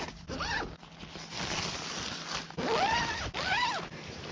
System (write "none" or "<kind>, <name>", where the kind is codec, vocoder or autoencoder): none